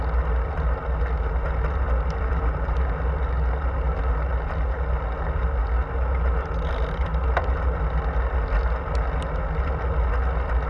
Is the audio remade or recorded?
recorded